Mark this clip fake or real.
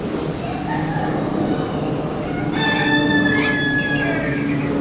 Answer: real